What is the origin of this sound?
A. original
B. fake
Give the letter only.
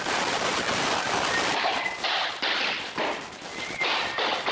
A